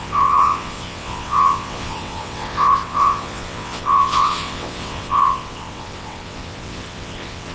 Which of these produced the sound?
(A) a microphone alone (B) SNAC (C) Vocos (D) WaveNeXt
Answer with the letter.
D